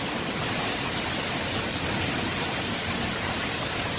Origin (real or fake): real